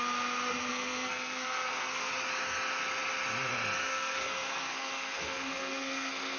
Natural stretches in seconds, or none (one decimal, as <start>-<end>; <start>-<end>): 0.0-0.7; 2.1-3.8